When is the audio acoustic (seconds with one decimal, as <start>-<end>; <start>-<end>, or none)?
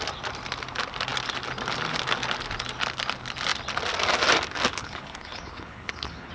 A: 0.0-4.8